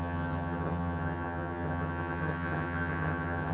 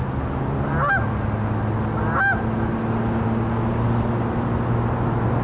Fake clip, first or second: first